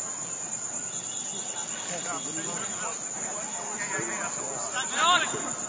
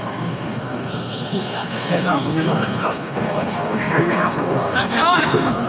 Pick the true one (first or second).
first